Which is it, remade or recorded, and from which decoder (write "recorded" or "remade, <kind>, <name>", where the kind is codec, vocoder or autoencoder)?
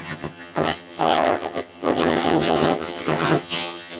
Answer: remade, vocoder, HiFi-GAN